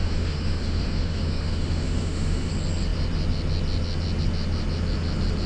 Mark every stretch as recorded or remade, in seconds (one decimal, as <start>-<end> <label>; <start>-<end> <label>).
0.0-2.5 remade; 2.5-5.5 recorded